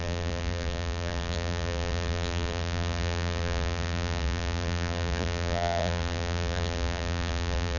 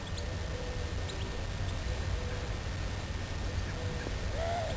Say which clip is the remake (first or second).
first